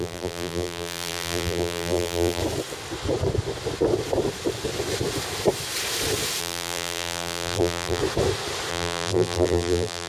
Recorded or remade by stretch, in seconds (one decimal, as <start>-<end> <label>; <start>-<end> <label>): 0.0-2.4 remade; 2.4-6.4 recorded; 6.4-8.0 remade; 8.0-8.7 recorded; 8.7-10.1 remade